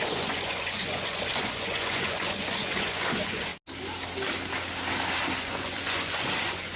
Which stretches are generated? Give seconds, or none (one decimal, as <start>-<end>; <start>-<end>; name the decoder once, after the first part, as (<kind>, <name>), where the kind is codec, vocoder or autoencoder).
0.0-3.5 (vocoder, Vocos); 5.4-6.8